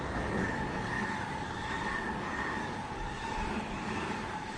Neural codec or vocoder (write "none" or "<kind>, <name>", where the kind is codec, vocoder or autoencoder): codec, DAC